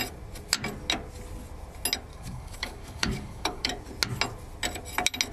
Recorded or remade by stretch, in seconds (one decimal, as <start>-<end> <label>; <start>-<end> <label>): 0.0-2.1 recorded; 2.1-3.7 remade; 3.7-5.3 recorded